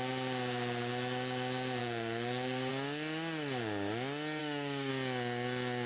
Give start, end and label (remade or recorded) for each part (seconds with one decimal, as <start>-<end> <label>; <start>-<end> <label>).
0.0-1.8 recorded; 1.8-2.7 remade; 2.7-4.4 recorded; 4.4-4.9 remade; 4.9-5.9 recorded